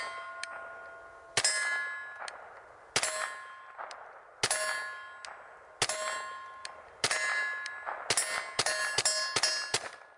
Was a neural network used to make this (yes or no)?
no